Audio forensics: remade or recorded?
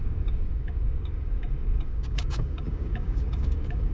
remade